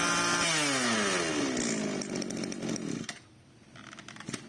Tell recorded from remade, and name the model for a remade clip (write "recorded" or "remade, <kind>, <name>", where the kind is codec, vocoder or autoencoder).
recorded